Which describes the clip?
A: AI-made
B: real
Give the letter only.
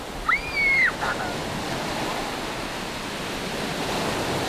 B